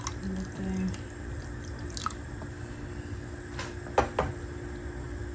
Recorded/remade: recorded